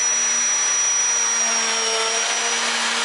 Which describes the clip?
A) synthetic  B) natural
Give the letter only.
B